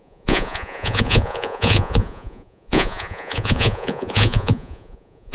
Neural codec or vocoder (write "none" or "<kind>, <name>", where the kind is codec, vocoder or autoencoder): vocoder, Vocos